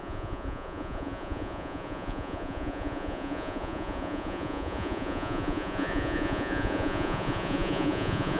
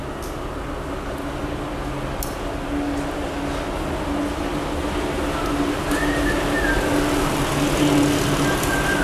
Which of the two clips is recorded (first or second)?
second